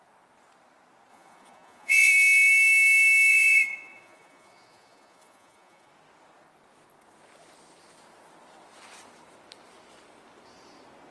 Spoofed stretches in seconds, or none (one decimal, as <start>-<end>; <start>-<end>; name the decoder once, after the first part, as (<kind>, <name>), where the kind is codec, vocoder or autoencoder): 1.1-2.1 (vocoder, Vocos); 3.3-5.9